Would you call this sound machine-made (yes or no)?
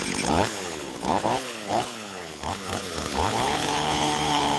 yes